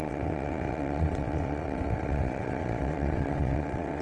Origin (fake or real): fake